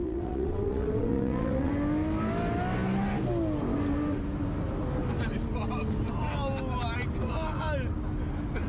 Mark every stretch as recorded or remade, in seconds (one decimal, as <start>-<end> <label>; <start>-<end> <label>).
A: 0.0-1.7 remade; 1.7-8.7 recorded